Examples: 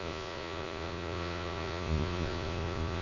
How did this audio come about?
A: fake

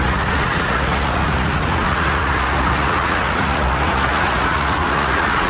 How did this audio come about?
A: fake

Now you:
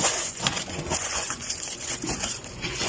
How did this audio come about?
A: fake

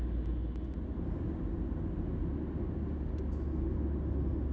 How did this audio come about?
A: real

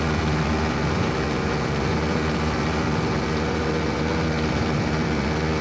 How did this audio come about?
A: fake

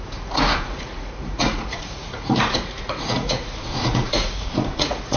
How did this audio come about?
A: fake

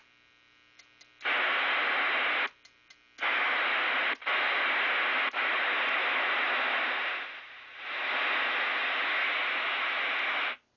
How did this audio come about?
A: real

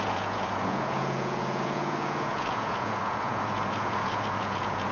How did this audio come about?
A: fake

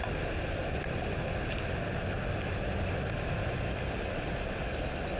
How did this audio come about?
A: real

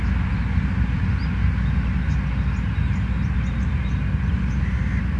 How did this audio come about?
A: real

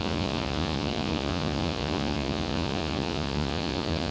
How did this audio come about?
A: fake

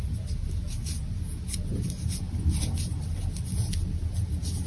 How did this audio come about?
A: real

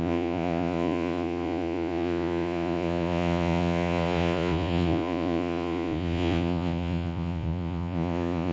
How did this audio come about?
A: fake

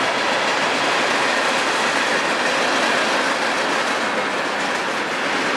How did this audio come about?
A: real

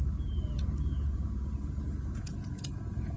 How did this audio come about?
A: fake